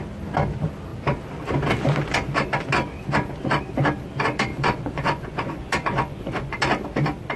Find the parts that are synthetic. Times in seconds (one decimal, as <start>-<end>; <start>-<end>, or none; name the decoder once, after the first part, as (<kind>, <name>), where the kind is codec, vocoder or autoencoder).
4.5-6.6 (vocoder, Vocos)